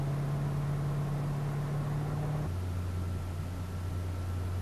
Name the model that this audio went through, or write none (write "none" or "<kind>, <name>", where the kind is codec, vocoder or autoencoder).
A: none